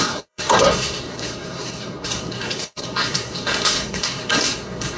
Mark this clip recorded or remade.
remade